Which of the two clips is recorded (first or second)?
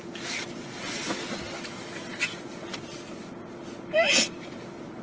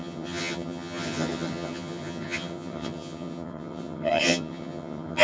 first